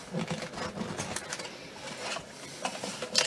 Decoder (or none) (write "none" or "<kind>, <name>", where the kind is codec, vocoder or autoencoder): none